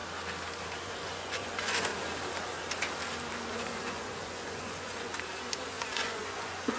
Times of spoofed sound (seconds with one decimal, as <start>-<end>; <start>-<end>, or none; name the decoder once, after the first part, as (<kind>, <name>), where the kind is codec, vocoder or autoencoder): 0.8-1.9 (vocoder, Vocos); 3.5-5.1; 5.7-6.8